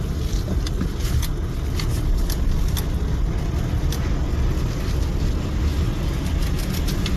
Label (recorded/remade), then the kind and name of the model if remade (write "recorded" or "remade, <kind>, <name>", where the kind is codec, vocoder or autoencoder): recorded